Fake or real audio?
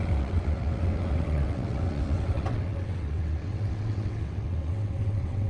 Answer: fake